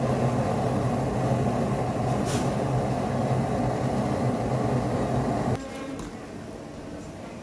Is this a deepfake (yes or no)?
no